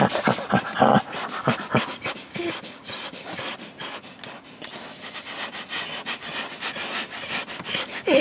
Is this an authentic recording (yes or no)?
yes